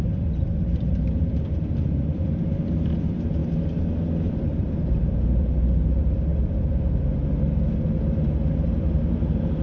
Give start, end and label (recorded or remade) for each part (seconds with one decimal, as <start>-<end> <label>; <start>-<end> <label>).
0.0-3.4 remade; 3.4-4.3 recorded; 4.3-9.6 remade